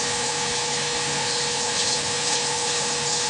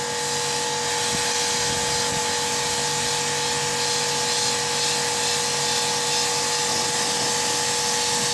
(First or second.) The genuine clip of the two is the second